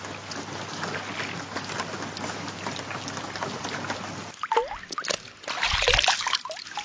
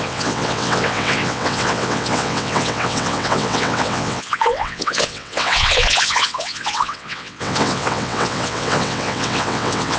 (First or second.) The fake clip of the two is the second